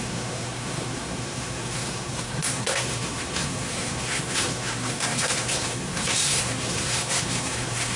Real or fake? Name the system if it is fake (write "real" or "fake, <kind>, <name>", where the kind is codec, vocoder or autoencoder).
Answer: fake, codec, SNAC